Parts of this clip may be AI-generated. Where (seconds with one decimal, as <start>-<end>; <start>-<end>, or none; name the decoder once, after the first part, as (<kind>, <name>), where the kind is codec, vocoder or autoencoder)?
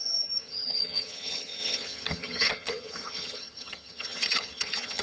0.0-5.0 (vocoder, HiFi-GAN)